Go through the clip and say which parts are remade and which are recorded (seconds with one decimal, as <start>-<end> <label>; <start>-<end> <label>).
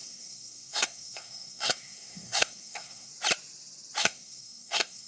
0.0-3.1 remade; 3.1-4.0 recorded; 4.0-5.1 remade